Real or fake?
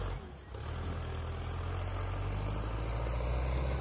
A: real